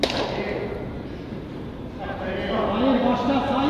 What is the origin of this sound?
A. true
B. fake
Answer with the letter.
A